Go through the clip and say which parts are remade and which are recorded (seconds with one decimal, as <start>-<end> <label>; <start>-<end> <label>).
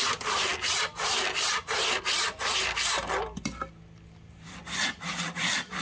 0.0-5.8 recorded